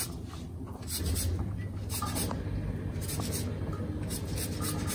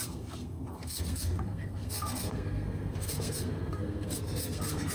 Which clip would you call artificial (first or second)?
second